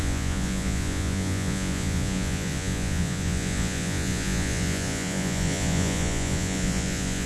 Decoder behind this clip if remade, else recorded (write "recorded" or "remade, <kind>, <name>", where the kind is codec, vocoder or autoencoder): remade, vocoder, Vocos